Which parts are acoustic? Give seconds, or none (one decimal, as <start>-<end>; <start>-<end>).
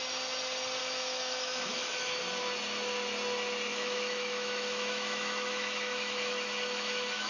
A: 0.0-0.8; 2.2-3.7